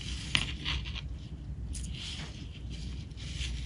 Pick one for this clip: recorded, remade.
recorded